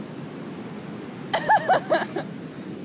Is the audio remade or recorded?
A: recorded